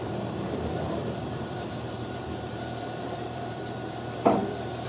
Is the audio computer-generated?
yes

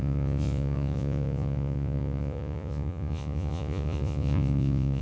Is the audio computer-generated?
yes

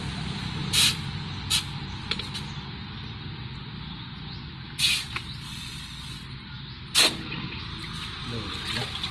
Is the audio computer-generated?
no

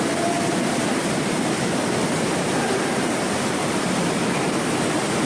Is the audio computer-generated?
yes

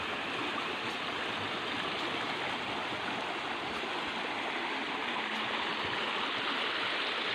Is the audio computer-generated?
no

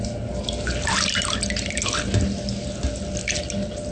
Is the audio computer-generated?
no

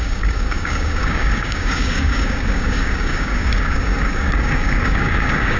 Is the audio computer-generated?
yes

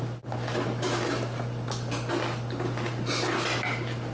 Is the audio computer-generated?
no